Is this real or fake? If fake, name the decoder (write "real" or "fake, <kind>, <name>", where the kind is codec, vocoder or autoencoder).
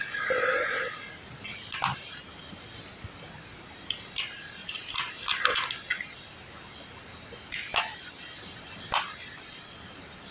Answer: real